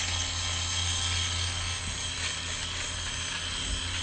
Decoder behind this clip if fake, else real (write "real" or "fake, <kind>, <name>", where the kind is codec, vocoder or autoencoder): real